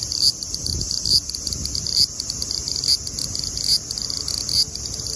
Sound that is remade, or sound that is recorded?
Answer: recorded